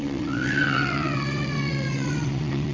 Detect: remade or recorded remade